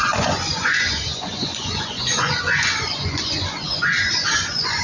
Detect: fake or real fake